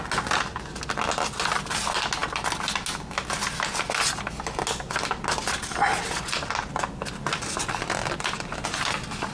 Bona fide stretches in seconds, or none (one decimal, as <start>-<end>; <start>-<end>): 0.0-9.3